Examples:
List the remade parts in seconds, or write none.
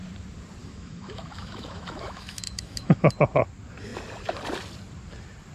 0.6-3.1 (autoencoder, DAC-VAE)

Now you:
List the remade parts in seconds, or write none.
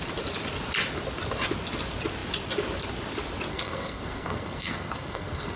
3.5-5.6 (codec, SNAC)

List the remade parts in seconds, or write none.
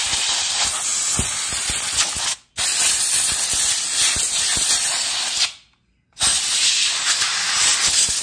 none